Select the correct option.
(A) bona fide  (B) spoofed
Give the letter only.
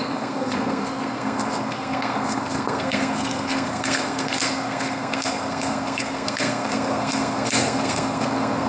B